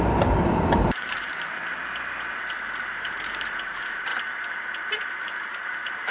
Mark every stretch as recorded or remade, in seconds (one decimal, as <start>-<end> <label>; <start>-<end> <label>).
0.0-1.6 remade; 1.6-2.9 recorded; 2.9-4.1 remade; 4.1-5.2 recorded; 5.2-6.1 remade